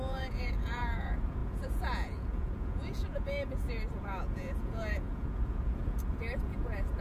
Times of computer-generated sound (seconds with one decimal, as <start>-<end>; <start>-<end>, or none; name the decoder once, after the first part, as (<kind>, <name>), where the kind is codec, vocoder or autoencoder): 0.0-7.0 (vocoder, Vocos)